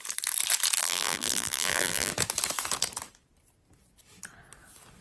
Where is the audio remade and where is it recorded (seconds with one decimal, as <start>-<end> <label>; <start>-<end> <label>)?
0.0-0.8 recorded; 0.8-2.1 remade; 2.1-5.0 recorded